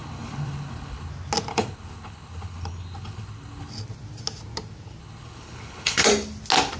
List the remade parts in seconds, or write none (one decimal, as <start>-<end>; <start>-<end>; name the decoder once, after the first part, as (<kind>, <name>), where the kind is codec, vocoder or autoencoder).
0.0-1.1 (codec, HILCodec); 1.5-3.7; 5.0-6.1